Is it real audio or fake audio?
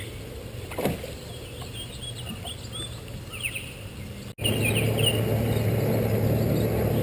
real